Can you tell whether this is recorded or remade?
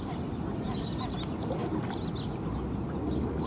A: recorded